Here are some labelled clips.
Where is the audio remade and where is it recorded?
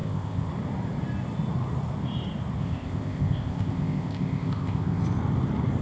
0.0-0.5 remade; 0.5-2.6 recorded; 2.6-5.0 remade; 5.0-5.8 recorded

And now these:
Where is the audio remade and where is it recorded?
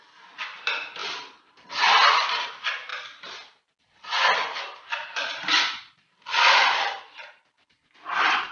0.0-2.9 remade; 2.9-4.6 recorded; 4.6-8.5 remade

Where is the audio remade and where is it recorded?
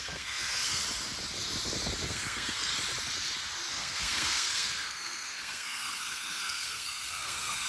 0.0-0.8 remade; 0.8-2.1 recorded; 2.1-2.7 remade; 2.7-3.7 recorded; 3.7-7.7 remade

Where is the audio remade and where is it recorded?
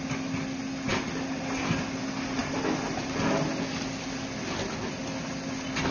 0.0-5.9 recorded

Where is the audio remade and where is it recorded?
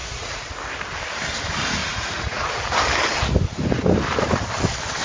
0.0-0.5 remade; 0.5-1.8 recorded; 1.8-2.5 remade; 2.5-5.0 recorded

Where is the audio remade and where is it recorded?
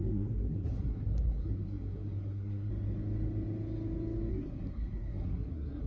0.0-2.7 remade; 2.7-4.3 recorded; 4.3-5.9 remade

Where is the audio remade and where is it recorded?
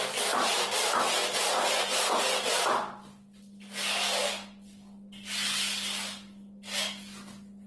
0.0-7.7 recorded